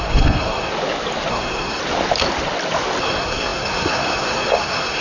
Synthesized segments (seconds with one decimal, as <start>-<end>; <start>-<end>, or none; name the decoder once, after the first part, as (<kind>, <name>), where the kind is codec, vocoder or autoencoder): 0.0-0.7 (codec, SNAC); 1.3-1.8; 3.0-5.0

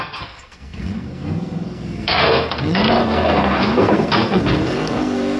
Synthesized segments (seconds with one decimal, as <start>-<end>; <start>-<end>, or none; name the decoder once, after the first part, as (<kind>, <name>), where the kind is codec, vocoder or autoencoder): 0.0-5.4 (codec, SNAC)